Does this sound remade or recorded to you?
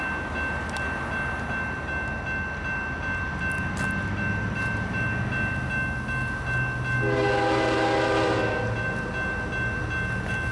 recorded